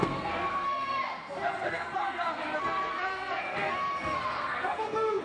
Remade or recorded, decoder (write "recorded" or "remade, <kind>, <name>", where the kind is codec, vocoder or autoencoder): remade, codec, SNAC